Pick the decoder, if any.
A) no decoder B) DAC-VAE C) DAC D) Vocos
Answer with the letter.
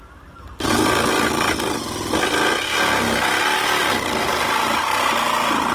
A